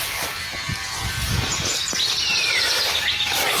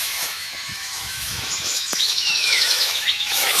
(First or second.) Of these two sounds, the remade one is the second